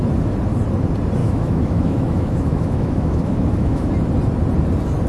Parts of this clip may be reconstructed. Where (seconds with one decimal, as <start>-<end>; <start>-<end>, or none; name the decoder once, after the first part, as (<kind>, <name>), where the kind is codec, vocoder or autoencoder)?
1.2-3.9 (autoencoder, DAC-VAE)